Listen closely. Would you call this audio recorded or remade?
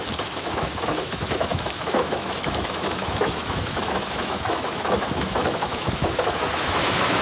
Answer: remade